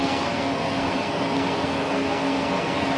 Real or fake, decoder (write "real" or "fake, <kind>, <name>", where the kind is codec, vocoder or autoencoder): fake, codec, SNAC